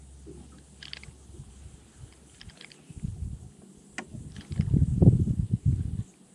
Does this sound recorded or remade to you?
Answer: recorded